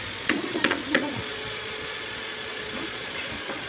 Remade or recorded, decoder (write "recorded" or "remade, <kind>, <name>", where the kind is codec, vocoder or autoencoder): remade, vocoder, Vocos